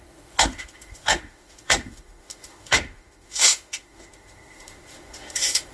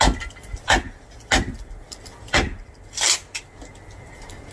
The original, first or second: second